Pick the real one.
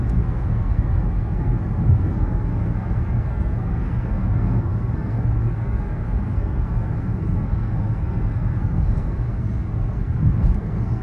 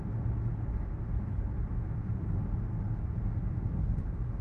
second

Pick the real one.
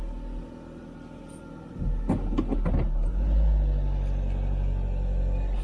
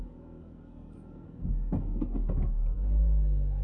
first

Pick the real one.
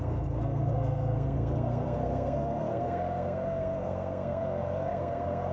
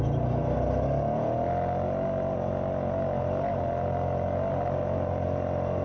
second